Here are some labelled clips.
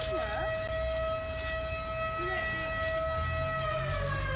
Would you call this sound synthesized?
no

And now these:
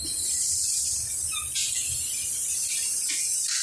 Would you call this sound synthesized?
no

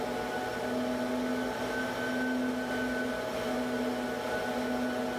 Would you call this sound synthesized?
no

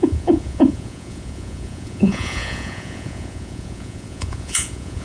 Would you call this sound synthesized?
yes